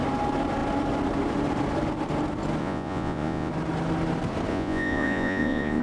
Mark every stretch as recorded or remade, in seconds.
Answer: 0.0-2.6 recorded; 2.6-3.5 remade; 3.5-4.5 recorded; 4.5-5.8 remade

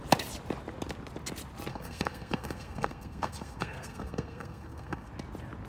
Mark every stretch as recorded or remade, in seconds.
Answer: 0.0-1.7 recorded; 1.7-5.1 remade; 5.1-5.7 recorded

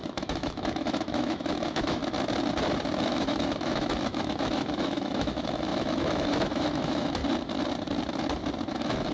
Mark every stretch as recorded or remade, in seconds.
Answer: 0.0-2.0 remade; 2.0-3.1 recorded; 3.1-7.2 remade; 7.2-8.7 recorded; 8.7-9.1 remade